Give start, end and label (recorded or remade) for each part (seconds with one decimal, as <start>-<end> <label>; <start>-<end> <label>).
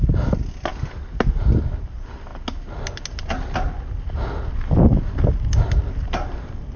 0.0-6.8 recorded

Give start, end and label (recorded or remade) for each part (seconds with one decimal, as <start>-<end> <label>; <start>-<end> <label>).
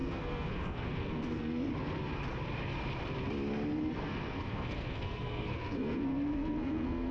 0.0-1.7 remade; 1.7-3.9 recorded; 3.9-7.1 remade